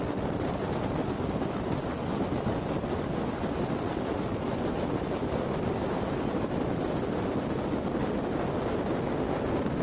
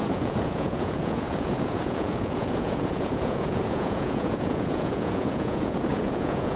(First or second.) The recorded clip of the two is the first